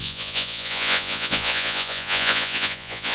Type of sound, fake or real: fake